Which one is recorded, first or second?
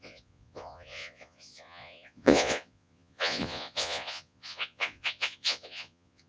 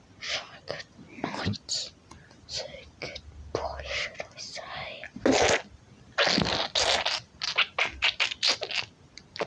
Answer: second